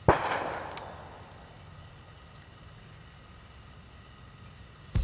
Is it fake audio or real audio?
real